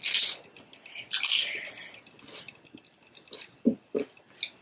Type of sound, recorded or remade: recorded